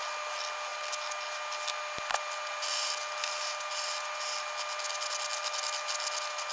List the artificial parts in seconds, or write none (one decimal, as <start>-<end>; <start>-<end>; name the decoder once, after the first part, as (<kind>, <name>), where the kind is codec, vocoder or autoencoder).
none